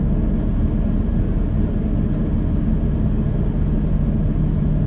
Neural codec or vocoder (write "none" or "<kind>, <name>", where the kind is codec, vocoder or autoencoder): none